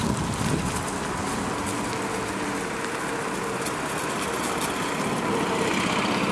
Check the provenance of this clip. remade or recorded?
recorded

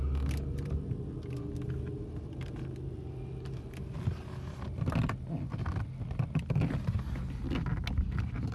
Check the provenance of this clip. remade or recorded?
recorded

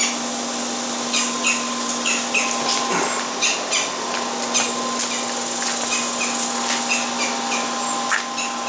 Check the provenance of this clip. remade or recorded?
recorded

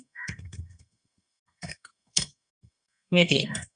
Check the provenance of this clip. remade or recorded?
remade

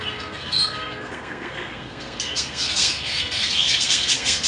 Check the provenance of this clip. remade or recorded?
remade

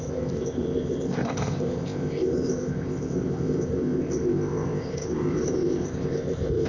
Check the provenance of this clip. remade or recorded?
remade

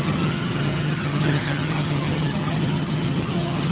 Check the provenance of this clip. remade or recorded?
remade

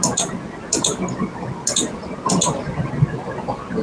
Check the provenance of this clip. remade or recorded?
recorded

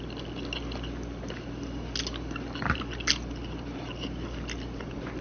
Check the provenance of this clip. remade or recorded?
recorded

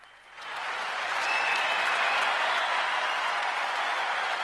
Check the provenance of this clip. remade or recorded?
remade